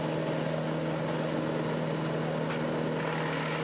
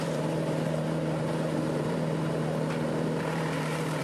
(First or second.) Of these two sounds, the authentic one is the first